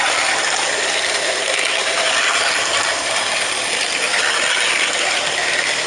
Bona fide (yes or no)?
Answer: yes